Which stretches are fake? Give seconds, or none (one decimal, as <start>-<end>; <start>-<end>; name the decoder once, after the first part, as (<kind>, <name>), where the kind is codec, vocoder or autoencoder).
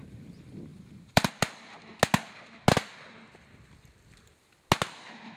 0.7-1.3 (vocoder, BigVGAN v2)